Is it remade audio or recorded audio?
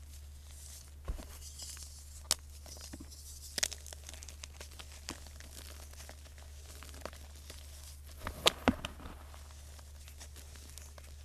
recorded